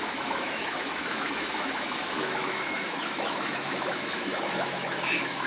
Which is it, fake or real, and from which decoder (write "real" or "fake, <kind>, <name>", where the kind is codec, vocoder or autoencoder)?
fake, autoencoder, DAC-VAE